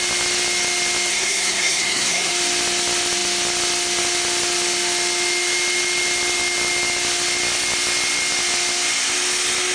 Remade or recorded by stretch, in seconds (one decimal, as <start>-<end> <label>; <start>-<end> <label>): 0.0-1.1 recorded; 1.1-2.3 remade; 2.3-9.7 recorded